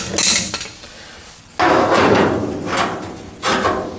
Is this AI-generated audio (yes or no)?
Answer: no